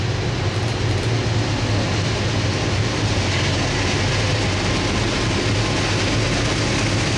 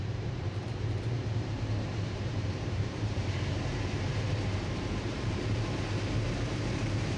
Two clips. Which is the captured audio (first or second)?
first